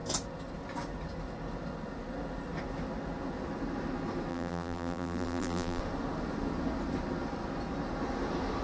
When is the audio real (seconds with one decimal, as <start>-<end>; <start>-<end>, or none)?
0.0-4.3; 5.8-8.6